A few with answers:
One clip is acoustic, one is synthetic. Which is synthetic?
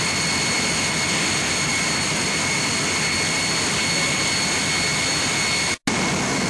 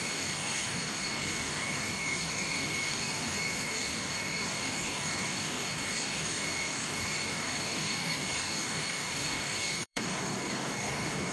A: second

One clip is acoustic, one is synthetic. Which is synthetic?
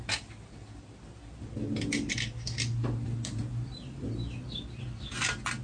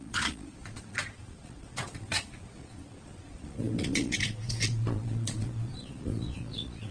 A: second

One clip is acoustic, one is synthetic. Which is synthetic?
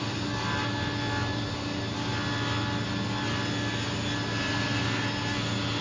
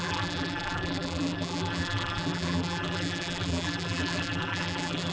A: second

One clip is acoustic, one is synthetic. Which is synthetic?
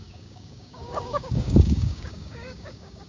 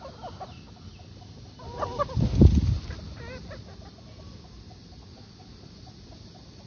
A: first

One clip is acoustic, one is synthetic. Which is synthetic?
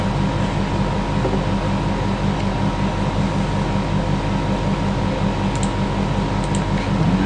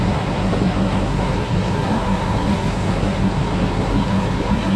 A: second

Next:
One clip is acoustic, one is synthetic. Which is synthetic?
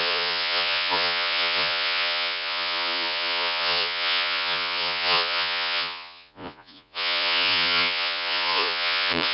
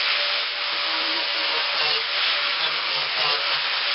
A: first